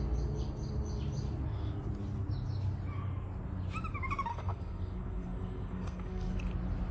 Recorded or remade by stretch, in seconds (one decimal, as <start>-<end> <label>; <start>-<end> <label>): 0.0-4.3 recorded; 4.3-6.4 remade; 6.4-6.9 recorded